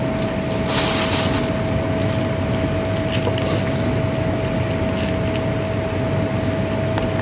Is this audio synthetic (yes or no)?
no